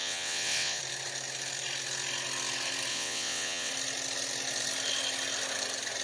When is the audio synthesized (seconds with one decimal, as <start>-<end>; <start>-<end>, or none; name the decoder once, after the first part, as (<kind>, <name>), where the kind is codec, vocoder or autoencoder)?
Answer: 0.0-0.8 (vocoder, WaveNeXt); 2.9-3.7